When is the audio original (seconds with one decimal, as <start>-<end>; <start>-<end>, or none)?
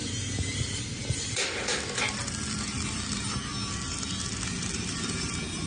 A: 0.0-5.7